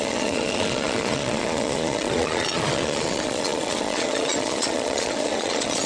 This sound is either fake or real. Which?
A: fake